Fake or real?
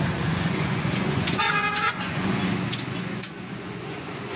fake